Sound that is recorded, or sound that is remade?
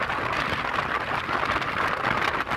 recorded